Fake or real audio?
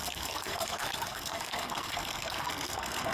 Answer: fake